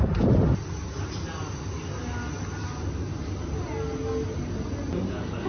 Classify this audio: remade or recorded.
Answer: recorded